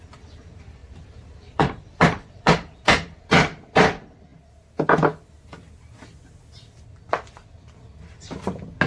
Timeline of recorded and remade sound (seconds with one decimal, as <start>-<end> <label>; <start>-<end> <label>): 0.0-0.8 recorded; 0.8-2.8 remade; 2.8-8.9 recorded